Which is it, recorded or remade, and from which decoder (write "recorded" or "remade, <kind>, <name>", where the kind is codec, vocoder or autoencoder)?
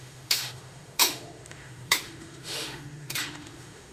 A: remade, autoencoder, DAC-VAE